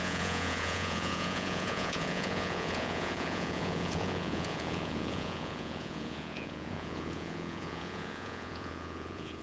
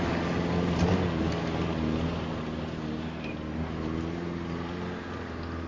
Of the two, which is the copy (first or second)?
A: first